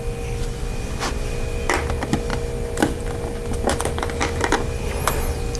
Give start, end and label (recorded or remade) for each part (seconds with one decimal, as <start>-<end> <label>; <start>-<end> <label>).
0.0-5.6 recorded